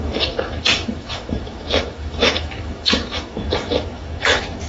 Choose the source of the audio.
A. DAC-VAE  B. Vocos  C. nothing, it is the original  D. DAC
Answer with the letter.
A